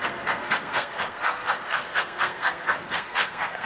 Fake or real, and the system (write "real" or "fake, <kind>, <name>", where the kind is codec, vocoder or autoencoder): fake, codec, SNAC